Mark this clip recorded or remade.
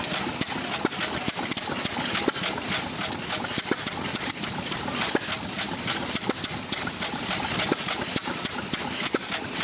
recorded